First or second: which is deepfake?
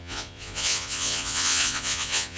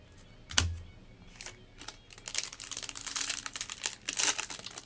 first